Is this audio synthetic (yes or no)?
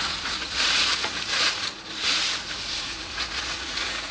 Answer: yes